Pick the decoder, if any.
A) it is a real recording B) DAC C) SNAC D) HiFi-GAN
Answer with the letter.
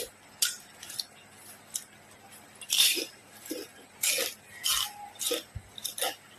A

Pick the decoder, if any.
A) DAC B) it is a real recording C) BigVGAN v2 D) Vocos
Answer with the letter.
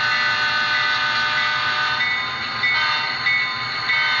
B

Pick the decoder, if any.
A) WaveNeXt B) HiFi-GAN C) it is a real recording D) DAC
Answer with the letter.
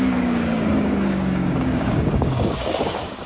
D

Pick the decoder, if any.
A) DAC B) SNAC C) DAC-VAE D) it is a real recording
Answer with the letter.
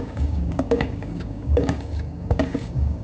A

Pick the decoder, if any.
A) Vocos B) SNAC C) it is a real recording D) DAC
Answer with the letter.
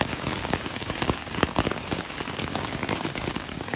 D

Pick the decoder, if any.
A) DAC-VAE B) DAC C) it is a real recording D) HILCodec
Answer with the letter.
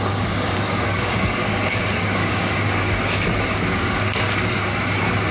B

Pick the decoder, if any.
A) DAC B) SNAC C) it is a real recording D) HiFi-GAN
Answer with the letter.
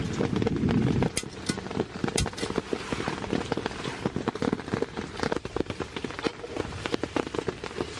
C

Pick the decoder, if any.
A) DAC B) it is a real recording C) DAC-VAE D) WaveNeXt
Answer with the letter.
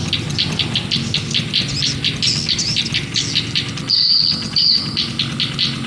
B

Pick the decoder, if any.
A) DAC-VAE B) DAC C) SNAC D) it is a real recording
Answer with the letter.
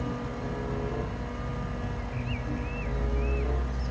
D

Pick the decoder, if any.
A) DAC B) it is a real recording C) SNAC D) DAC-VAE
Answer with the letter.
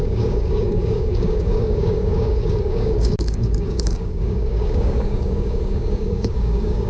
A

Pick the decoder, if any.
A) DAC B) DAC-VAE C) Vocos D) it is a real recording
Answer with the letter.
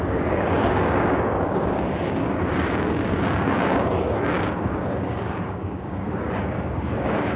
A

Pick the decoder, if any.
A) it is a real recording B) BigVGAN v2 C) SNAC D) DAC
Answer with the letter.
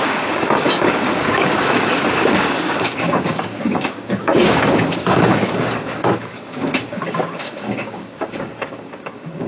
D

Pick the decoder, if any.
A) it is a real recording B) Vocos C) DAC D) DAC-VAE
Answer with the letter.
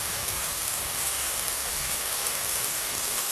C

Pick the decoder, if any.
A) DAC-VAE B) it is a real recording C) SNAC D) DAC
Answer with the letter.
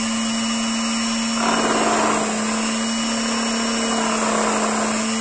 B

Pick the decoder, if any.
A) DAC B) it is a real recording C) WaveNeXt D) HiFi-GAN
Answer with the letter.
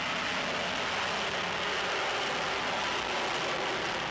B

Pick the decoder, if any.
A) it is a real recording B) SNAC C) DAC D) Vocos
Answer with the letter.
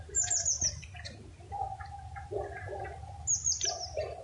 A